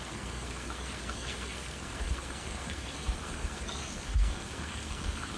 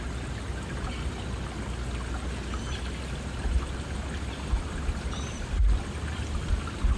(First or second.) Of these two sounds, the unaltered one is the second